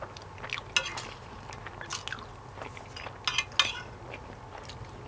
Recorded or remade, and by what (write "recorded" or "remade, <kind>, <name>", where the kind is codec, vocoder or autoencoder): recorded